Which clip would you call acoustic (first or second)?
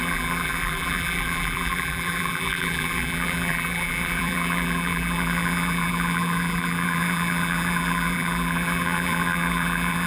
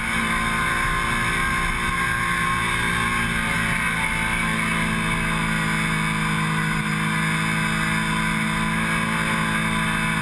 second